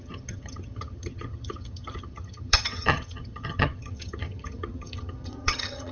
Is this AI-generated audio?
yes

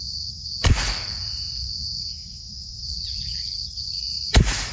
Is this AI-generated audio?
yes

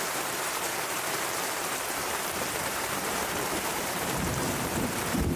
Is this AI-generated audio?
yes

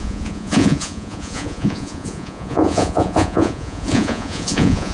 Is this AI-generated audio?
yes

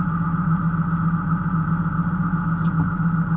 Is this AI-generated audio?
no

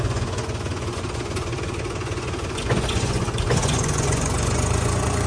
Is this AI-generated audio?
yes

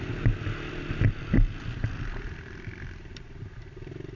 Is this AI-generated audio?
no